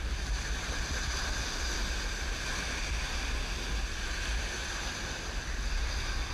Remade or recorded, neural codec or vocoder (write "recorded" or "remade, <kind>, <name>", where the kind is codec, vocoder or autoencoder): recorded